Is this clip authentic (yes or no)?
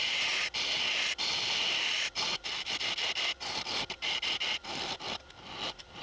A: yes